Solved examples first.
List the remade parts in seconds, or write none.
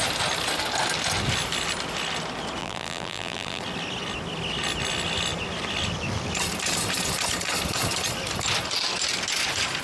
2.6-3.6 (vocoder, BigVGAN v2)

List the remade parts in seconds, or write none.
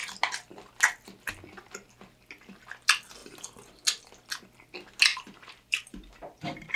5.1-6.8 (vocoder, BigVGAN v2)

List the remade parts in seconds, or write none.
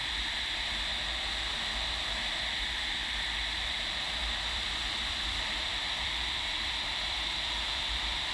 4.2-8.3 (vocoder, BigVGAN v2)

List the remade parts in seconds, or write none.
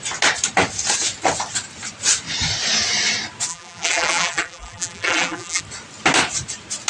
3.5-5.6 (vocoder, BigVGAN v2)